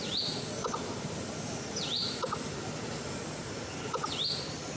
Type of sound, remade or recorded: recorded